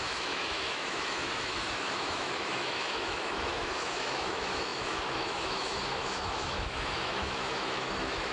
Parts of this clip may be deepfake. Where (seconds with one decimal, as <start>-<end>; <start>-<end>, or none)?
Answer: 0.0-8.3